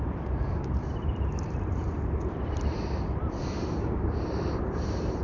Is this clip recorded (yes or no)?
no